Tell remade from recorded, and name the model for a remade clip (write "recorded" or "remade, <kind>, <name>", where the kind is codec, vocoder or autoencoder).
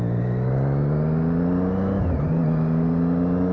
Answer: recorded